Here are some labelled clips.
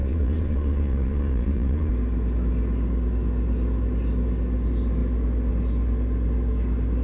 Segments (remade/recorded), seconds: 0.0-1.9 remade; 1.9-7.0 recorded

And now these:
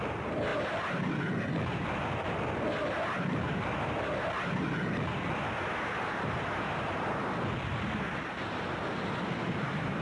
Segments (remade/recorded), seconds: 0.0-10.0 recorded

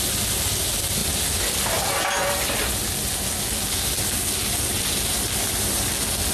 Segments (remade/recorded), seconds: 0.0-6.3 recorded

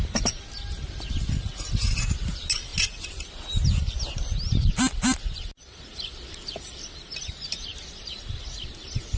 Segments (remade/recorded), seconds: 0.0-9.2 recorded

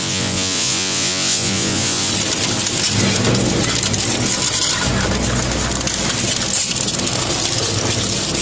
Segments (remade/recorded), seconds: 0.0-2.1 remade; 2.1-8.4 recorded

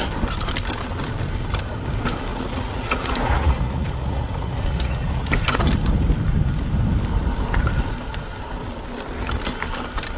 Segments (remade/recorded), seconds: 0.0-2.3 recorded; 2.3-5.3 remade; 5.3-10.2 recorded

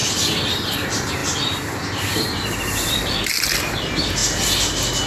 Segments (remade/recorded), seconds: 0.0-0.5 recorded; 0.5-1.2 remade; 1.2-2.9 recorded; 2.9-4.2 remade; 4.2-5.1 recorded

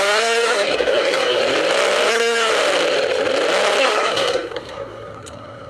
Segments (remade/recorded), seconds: 0.0-1.4 remade; 1.4-2.1 recorded; 2.1-2.5 remade; 2.5-3.8 recorded; 3.8-5.7 remade